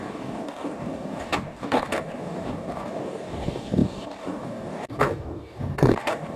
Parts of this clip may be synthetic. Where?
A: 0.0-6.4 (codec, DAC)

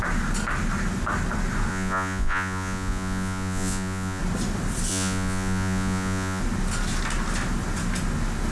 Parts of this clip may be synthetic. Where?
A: 1.7-4.2 (vocoder, Vocos); 4.9-6.4

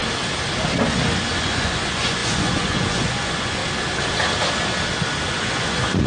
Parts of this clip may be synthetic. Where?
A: 1.3-3.6 (vocoder, Vocos); 5.3-6.1

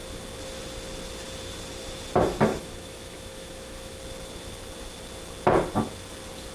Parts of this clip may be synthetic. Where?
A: 2.5-4.0 (autoencoder, DAC-VAE)

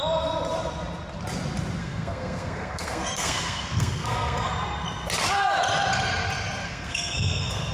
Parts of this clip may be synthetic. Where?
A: 1.8-4.5 (codec, SNAC); 6.6-7.7

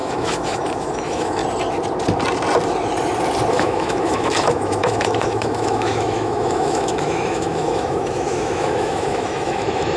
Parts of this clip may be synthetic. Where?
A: 0.0-1.4 (autoencoder, DAC-VAE); 3.5-10.0

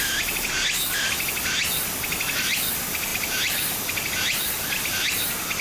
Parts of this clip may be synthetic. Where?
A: none